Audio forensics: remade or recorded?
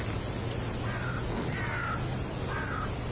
recorded